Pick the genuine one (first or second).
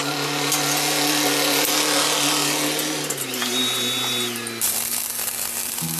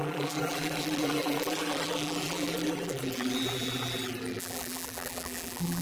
first